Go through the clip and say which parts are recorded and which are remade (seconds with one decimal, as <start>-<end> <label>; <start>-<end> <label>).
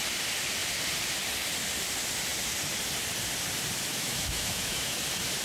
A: 0.0-3.9 recorded; 3.9-5.0 remade; 5.0-5.4 recorded